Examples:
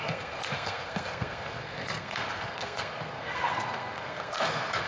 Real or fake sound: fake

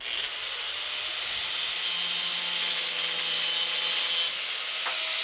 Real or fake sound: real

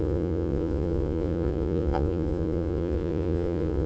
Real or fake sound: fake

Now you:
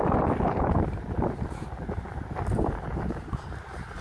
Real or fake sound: real